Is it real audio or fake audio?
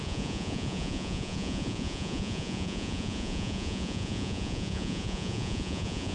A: fake